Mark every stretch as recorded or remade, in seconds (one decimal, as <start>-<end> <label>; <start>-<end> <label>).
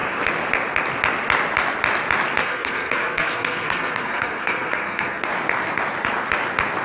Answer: 0.0-2.4 recorded; 2.4-5.3 remade; 5.3-6.8 recorded